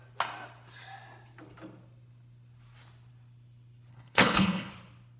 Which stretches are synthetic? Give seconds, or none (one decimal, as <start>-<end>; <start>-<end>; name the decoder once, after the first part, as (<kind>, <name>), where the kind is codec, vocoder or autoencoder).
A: 3.9-4.7 (codec, HILCodec)

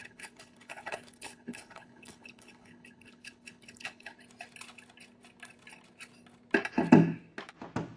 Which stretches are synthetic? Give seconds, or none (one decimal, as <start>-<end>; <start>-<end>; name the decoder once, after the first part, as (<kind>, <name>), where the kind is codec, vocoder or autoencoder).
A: 0.0-4.2 (codec, HILCodec)

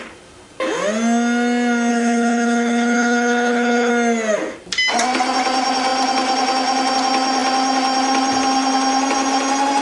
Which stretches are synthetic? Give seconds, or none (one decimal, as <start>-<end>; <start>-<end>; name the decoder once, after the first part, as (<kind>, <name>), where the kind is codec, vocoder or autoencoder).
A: 1.9-3.9 (codec, HILCodec)

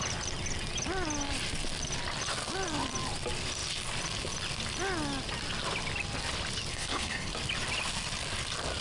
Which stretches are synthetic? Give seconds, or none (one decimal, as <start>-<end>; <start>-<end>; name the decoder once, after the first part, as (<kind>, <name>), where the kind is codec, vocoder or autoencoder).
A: 6.7-7.3 (codec, HILCodec)

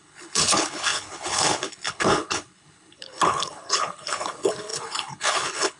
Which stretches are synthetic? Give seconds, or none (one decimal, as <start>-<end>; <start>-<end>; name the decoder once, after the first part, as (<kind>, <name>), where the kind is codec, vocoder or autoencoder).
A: 0.0-5.8 (codec, HILCodec)

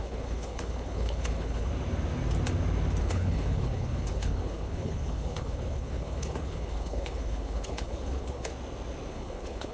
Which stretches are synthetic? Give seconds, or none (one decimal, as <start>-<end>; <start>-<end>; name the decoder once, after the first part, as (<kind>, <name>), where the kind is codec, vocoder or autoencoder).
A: 0.0-1.7 (codec, HILCodec); 3.0-8.5; 9.1-9.7

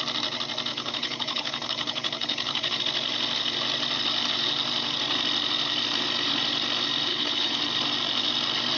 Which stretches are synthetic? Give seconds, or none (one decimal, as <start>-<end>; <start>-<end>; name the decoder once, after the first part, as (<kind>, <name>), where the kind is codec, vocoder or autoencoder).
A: 0.7-2.8 (codec, HILCodec); 7.1-7.6

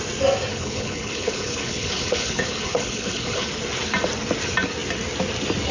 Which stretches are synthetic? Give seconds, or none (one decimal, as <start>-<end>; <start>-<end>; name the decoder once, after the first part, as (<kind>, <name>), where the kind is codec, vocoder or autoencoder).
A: 0.5-3.5 (codec, HILCodec)